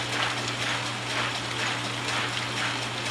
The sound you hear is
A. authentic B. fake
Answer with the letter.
A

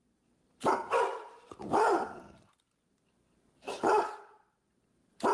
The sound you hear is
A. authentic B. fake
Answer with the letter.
B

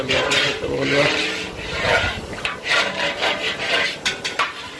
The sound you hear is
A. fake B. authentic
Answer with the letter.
A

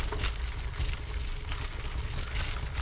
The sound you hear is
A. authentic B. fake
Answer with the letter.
A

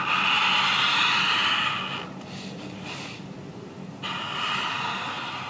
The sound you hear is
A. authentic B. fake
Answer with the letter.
A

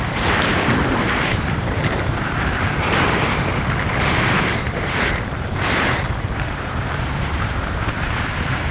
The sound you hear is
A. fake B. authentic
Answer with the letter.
A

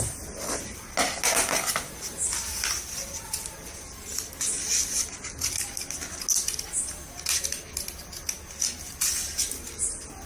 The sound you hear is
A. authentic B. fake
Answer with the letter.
A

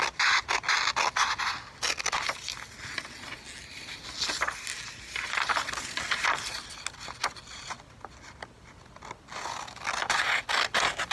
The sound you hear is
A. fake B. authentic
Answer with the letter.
B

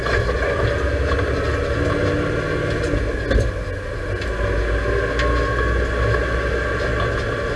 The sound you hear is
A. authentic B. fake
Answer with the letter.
A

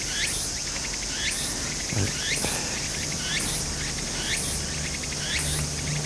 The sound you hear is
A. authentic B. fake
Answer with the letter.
A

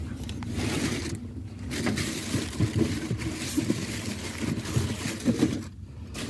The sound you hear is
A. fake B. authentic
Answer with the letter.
B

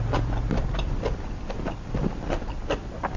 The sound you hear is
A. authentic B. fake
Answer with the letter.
B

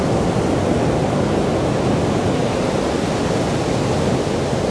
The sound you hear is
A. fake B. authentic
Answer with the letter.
B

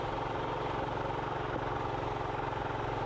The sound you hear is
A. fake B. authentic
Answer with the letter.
B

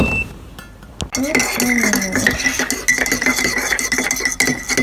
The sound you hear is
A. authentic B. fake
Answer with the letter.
A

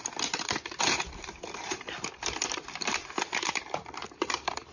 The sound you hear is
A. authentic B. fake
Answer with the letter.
B